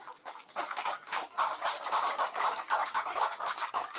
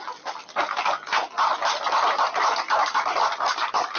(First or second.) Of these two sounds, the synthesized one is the first